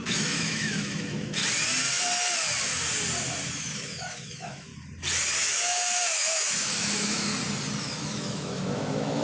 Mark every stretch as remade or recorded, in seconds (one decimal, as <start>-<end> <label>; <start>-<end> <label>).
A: 0.0-1.4 remade; 1.4-3.5 recorded; 3.5-4.7 remade; 4.7-5.4 recorded; 5.4-7.3 remade; 7.3-7.8 recorded; 7.8-9.2 remade